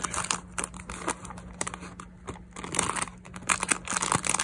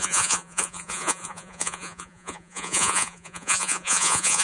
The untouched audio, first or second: first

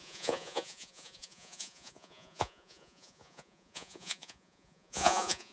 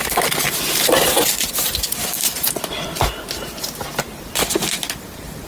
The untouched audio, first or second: second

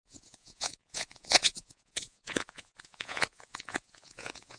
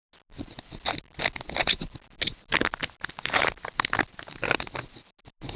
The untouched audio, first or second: second